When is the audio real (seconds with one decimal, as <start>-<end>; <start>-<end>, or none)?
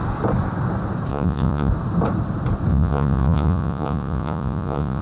0.0-1.1; 1.7-2.7